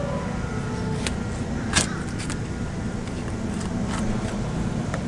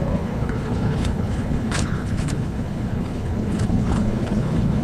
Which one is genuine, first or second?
first